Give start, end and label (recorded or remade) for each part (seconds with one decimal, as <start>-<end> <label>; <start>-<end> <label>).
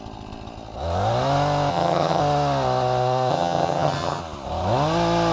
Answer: 0.0-1.7 recorded; 1.7-2.2 remade; 2.2-3.3 recorded; 3.3-4.2 remade; 4.2-5.3 recorded